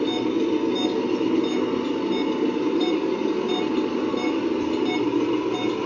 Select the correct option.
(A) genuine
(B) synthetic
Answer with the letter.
A